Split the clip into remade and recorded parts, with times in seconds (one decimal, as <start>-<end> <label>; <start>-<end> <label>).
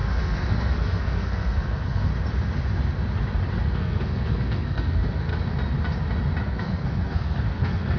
0.0-2.1 remade; 2.1-3.6 recorded; 3.6-5.3 remade; 5.3-6.4 recorded; 6.4-8.0 remade